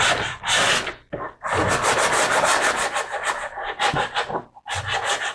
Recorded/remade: recorded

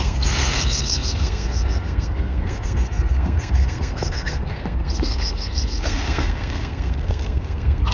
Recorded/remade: remade